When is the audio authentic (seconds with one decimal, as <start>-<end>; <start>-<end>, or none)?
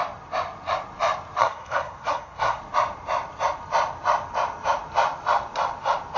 0.0-1.4; 2.6-6.2